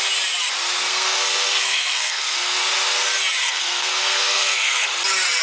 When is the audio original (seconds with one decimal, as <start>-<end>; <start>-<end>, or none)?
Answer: 0.0-0.9; 2.6-3.4; 4.9-5.4